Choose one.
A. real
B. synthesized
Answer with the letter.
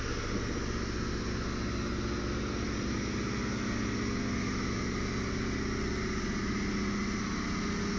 A